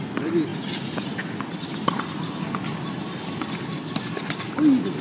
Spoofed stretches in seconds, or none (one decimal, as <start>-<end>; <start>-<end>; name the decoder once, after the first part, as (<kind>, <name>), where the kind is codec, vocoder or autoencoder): none